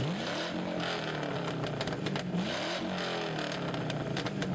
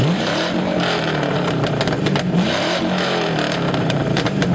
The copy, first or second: second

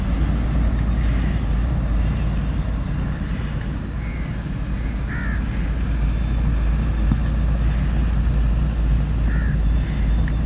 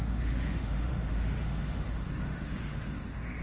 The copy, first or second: second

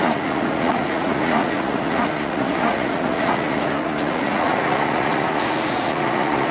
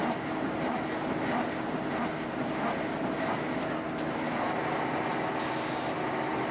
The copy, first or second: first